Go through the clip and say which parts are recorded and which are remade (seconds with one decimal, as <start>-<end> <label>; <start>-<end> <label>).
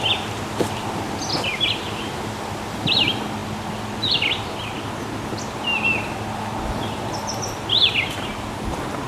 0.0-9.1 recorded